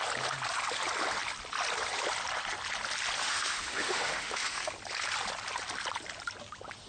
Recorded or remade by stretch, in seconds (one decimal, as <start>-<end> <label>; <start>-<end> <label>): 0.0-3.2 recorded; 3.2-4.7 remade; 4.7-6.9 recorded